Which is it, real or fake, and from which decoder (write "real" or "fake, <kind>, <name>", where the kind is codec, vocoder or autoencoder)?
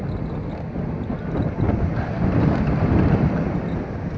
real